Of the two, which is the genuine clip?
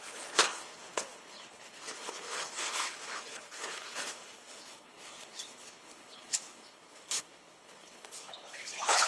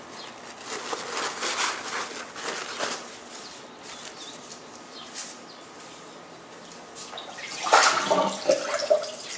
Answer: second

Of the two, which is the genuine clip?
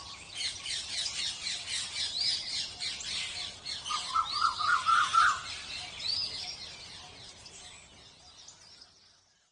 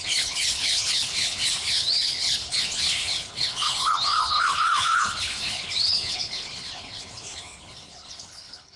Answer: first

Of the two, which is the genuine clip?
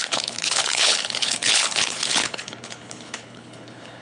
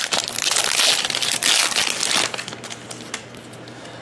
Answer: second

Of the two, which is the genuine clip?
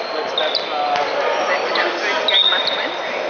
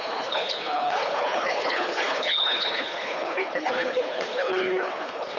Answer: first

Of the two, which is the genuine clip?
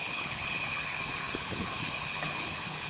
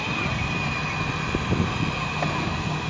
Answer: second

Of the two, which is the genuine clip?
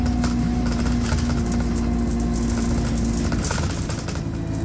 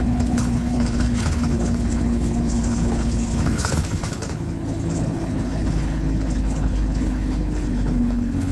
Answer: first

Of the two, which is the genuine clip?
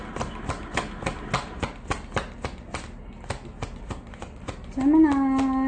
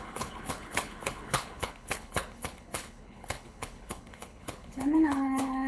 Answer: first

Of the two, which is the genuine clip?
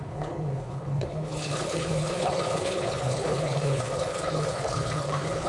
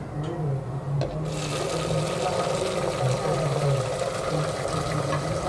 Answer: second